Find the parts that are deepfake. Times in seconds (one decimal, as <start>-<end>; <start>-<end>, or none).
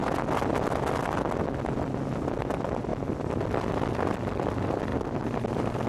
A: 1.4-4.9; 5.5-5.9